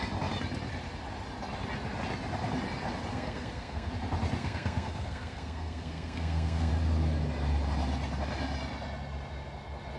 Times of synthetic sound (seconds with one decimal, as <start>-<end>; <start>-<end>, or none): 3.1-3.9; 4.4-6.7